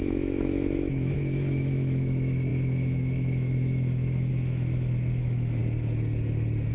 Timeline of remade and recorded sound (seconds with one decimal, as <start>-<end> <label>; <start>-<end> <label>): 0.0-5.6 remade; 5.6-6.7 recorded